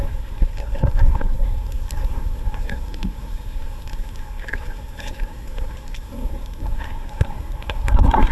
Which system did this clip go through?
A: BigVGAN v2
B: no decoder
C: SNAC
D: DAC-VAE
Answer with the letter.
C